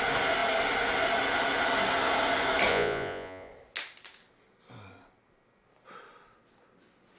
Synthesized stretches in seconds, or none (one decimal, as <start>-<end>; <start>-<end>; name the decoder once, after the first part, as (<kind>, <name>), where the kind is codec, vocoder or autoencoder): 2.7-3.5 (vocoder, Vocos)

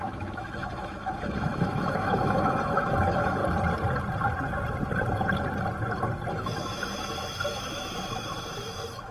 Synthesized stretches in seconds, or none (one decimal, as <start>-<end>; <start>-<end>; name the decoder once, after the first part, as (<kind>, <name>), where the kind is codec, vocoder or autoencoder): 0.0-3.4 (autoencoder, DAC-VAE); 6.3-9.1

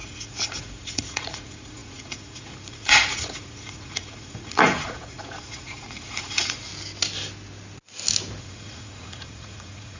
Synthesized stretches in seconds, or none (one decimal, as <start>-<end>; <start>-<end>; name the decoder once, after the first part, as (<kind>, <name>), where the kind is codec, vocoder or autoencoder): 0.0-6.7 (vocoder, Vocos); 8.4-10.0

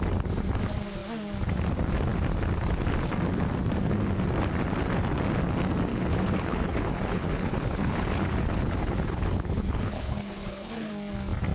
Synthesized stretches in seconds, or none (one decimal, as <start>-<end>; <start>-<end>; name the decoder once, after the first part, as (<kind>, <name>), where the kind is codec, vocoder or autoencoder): 5.9-10.9 (codec, HILCodec)

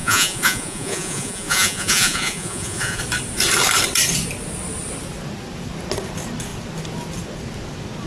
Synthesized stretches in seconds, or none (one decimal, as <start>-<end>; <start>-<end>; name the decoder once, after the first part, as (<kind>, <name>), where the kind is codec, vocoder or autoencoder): 0.0-3.0 (vocoder, Vocos)

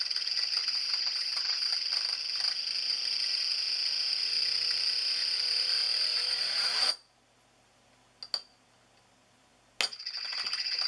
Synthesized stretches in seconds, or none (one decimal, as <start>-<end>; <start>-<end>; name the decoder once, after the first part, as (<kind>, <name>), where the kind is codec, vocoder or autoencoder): 0.6-1.7 (vocoder, Vocos); 6.1-6.9

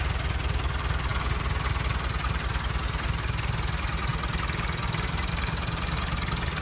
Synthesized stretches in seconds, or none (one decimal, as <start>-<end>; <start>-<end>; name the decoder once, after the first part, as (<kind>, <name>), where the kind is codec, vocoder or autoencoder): none

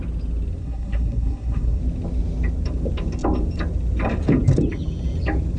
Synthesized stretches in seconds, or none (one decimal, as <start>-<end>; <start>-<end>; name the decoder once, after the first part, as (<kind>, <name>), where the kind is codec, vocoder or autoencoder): 0.6-1.8 (codec, SNAC)